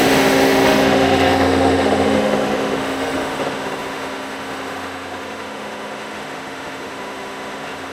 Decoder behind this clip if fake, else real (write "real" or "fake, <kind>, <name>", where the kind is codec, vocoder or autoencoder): fake, autoencoder, DAC-VAE